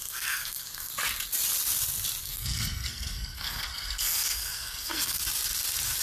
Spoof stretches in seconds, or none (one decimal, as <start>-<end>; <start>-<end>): 0.0-0.9; 2.2-5.2